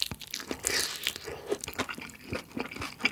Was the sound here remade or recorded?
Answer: recorded